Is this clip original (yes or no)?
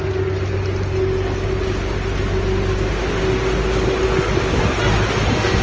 yes